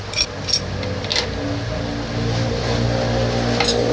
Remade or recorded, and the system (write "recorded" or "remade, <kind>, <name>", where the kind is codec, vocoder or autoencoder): recorded